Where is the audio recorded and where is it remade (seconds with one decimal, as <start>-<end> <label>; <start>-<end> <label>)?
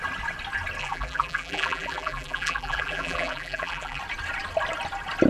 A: 0.0-0.8 recorded; 0.8-4.0 remade; 4.0-5.3 recorded